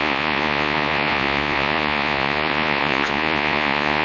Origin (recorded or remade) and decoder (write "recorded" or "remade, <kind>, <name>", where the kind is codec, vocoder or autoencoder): remade, vocoder, Vocos